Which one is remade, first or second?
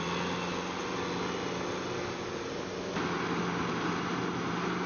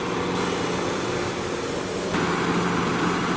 second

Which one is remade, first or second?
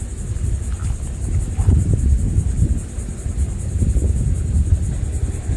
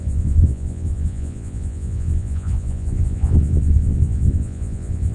second